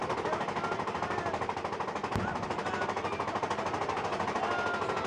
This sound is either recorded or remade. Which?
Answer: recorded